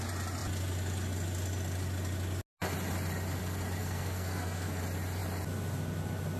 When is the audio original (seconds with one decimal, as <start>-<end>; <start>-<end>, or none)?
0.0-3.8; 4.8-6.4